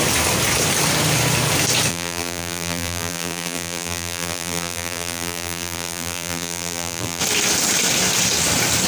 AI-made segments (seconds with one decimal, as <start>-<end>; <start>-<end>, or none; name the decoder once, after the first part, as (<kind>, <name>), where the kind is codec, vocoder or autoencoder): 1.9-7.2 (vocoder, BigVGAN v2)